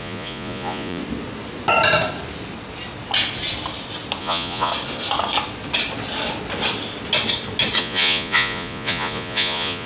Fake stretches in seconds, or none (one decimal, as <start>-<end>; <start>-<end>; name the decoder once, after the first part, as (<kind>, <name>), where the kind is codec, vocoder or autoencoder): 0.0-1.0 (vocoder, Vocos); 4.2-4.7; 7.8-9.9